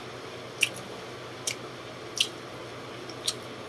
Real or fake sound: real